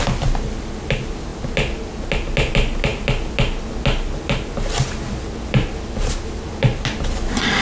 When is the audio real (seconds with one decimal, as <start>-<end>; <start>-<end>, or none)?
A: 0.0-7.6